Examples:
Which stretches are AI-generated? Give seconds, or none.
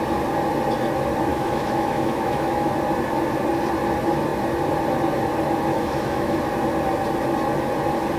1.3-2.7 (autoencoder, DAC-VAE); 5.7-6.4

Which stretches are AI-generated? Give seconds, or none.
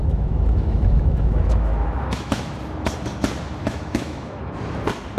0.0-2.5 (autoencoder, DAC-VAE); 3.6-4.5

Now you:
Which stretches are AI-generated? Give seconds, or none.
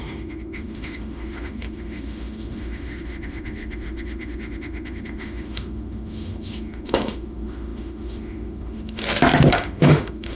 0.0-9.0 (autoencoder, DAC-VAE); 9.5-10.3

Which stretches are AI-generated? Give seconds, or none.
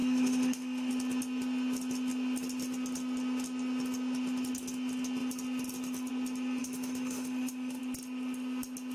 0.0-0.9 (autoencoder, DAC-VAE); 6.6-7.8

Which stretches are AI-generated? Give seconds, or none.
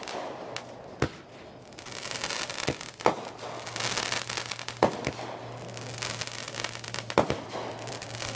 none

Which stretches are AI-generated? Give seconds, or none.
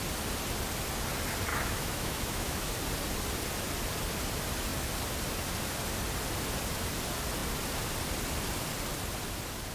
1.5-2.7 (autoencoder, DAC-VAE)